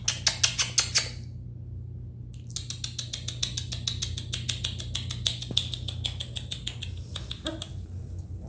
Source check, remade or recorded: recorded